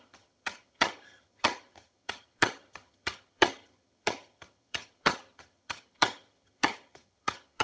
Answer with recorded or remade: remade